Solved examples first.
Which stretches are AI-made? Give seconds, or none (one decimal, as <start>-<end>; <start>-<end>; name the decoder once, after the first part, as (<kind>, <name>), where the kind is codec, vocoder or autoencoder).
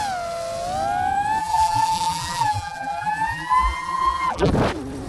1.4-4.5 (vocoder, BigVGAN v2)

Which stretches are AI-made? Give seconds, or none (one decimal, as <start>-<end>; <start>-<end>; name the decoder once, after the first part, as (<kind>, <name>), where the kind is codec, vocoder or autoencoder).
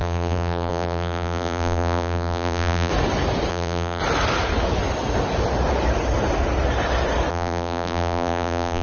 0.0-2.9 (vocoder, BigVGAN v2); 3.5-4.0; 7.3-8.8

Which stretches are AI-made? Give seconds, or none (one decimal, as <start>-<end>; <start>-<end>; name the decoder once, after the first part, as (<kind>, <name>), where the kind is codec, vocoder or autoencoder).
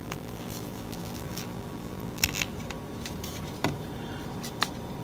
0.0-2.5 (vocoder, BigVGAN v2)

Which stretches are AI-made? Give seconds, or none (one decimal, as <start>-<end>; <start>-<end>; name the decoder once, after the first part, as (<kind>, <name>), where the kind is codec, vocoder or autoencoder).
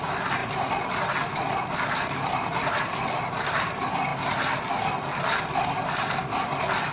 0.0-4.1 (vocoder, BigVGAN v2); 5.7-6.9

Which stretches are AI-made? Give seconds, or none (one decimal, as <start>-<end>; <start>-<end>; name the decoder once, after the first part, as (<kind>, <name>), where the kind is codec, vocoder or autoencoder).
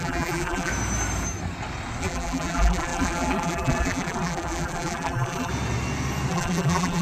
0.0-0.7 (vocoder, BigVGAN v2); 2.0-5.5; 6.3-7.0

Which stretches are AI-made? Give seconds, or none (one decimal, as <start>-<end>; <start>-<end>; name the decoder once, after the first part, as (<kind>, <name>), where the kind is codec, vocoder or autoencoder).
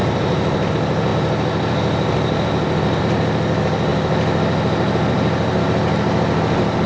0.0-0.7 (vocoder, BigVGAN v2)